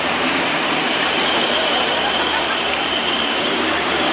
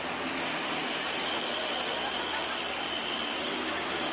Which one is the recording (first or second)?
second